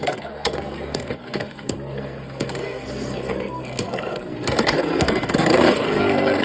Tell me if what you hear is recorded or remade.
remade